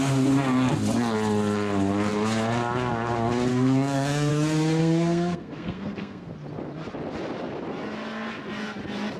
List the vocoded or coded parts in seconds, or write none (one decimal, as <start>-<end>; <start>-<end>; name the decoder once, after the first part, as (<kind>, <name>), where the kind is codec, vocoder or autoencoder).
3.5-4.3 (codec, SNAC); 4.8-6.3